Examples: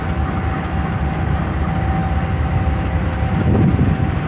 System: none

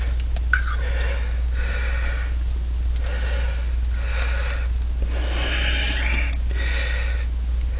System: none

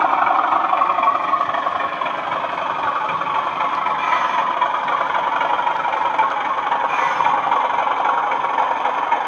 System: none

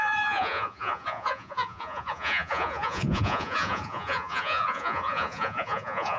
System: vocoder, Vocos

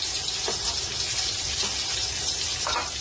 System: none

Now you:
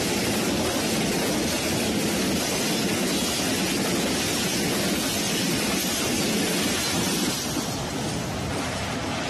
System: none